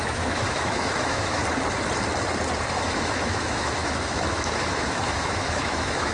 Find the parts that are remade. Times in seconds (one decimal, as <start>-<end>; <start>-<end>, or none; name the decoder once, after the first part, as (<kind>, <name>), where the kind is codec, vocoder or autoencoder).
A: 0.0-1.4 (autoencoder, DAC-VAE); 2.7-6.1